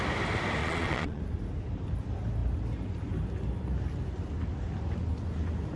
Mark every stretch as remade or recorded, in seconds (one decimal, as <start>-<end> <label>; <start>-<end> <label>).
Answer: 0.0-0.6 recorded; 0.6-1.2 remade; 1.2-5.8 recorded